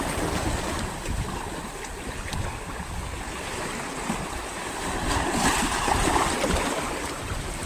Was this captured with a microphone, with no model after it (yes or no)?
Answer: yes